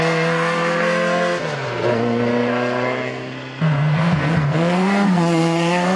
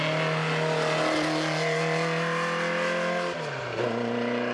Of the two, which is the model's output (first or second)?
first